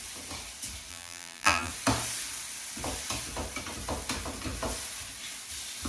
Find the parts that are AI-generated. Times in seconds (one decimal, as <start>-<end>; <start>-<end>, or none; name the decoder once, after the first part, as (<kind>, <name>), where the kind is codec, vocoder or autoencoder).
0.9-1.7 (vocoder, BigVGAN v2)